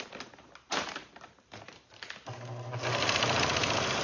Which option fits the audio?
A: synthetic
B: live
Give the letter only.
A